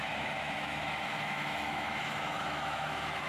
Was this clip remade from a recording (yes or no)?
yes